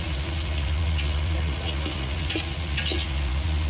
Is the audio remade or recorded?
remade